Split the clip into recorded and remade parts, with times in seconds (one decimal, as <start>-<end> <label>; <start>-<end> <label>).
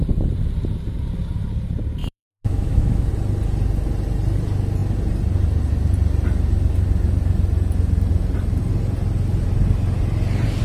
0.0-2.0 recorded; 2.0-3.1 remade; 3.1-10.6 recorded